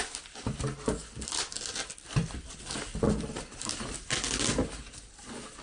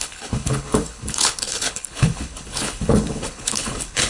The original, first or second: first